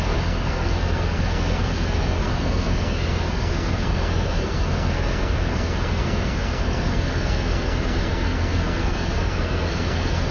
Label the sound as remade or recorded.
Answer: remade